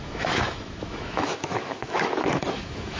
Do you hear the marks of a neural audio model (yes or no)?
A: yes